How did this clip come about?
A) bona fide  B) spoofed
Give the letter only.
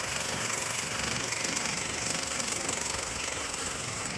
B